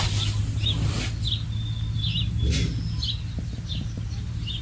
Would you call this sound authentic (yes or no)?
yes